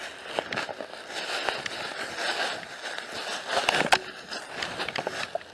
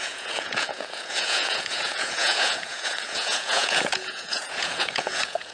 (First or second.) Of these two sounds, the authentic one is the first